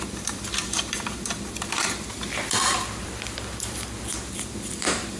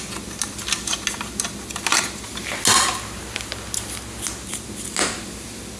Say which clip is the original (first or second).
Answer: second